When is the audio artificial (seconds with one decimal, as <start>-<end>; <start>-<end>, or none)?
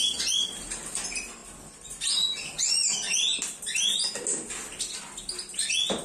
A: none